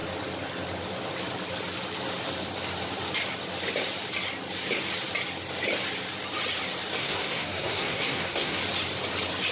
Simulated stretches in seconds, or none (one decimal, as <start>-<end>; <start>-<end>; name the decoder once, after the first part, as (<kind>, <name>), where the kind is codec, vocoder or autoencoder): 7.0-8.6 (codec, SNAC)